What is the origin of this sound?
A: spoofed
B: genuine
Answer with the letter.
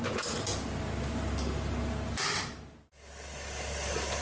B